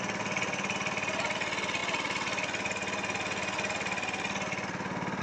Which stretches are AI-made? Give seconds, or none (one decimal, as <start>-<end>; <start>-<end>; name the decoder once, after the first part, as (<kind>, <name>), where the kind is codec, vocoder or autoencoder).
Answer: none